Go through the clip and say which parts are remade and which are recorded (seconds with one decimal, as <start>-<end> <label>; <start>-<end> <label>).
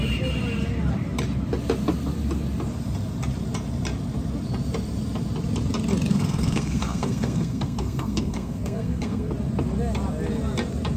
0.0-6.1 recorded; 6.1-9.3 remade; 9.3-11.0 recorded